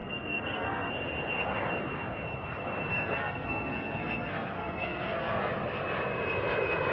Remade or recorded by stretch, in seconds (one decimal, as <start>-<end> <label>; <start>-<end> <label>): 0.0-0.9 remade; 0.9-2.9 recorded; 2.9-5.5 remade; 5.5-6.9 recorded

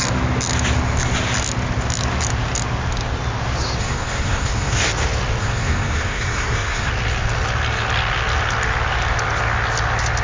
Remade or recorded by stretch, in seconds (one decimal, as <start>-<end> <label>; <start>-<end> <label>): 0.0-3.8 recorded; 3.8-4.8 remade; 4.8-5.4 recorded; 5.4-6.9 remade; 6.9-10.2 recorded

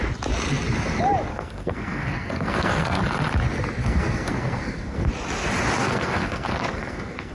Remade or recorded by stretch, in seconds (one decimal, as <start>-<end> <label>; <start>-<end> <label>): 0.0-1.3 recorded; 1.3-3.0 remade; 3.0-3.8 recorded; 3.8-5.1 remade; 5.1-5.8 recorded; 5.8-7.3 remade

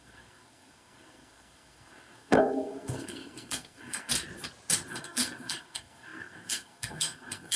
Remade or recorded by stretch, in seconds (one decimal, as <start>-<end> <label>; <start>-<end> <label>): 0.0-4.1 remade; 4.1-4.9 recorded; 4.9-7.6 remade

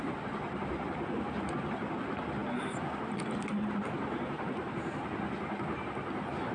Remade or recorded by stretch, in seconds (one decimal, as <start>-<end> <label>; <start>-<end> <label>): 0.0-6.5 recorded